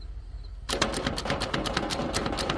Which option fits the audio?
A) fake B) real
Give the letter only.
A